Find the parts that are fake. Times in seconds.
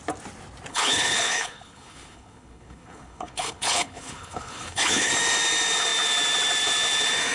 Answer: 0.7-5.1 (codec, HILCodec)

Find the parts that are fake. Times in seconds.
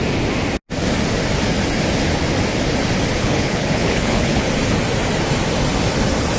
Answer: 3.2-4.5 (codec, HILCodec)